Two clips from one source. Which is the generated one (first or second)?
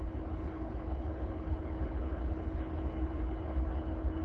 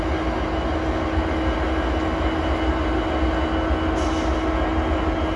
first